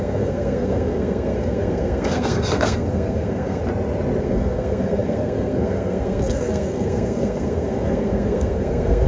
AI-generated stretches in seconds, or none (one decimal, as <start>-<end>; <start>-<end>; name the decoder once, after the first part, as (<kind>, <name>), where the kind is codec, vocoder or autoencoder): 0.0-3.6 (codec, SNAC); 4.2-9.1